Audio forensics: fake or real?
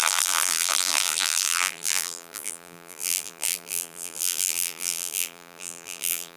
fake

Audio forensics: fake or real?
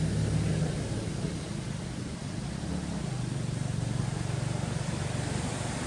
real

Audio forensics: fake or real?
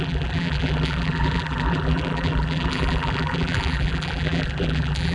fake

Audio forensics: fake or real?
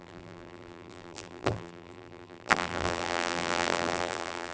fake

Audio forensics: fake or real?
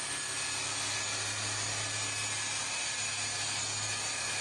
real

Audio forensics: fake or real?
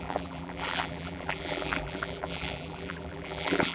fake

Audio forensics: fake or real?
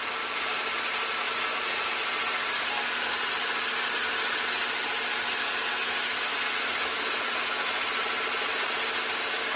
real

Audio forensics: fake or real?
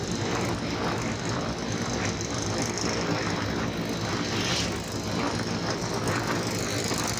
real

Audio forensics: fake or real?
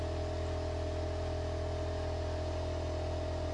real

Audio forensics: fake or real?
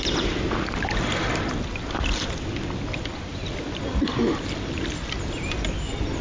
real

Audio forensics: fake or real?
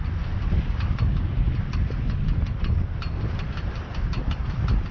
real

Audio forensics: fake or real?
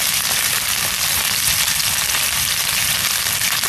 fake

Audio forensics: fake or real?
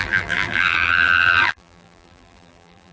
fake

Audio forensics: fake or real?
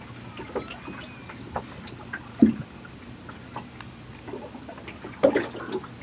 real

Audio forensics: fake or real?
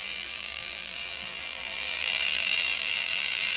fake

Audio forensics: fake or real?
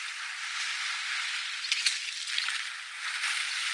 real